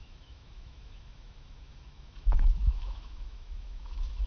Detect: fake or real fake